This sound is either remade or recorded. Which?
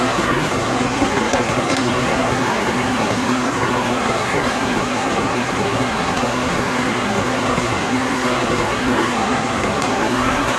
remade